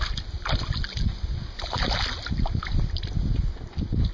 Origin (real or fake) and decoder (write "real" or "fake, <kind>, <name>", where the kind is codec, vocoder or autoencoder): real